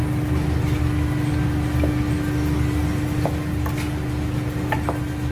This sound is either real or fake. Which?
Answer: real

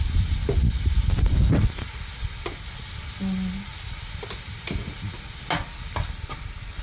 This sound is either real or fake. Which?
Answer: real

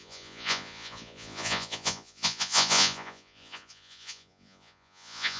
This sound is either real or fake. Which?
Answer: fake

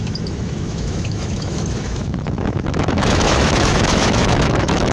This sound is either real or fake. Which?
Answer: fake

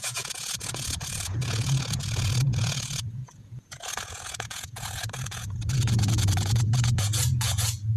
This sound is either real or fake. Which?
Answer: fake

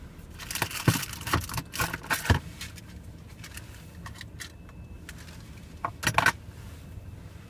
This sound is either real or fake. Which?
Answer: real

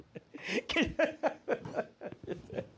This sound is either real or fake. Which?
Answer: real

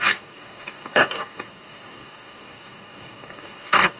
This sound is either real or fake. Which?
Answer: fake